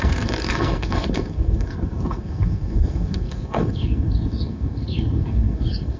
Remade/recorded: remade